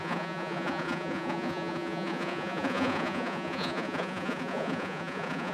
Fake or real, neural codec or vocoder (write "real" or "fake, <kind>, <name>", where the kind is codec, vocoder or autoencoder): fake, vocoder, Vocos